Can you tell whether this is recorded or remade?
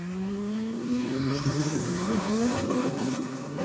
remade